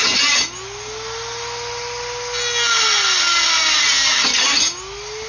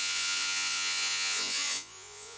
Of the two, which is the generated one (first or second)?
second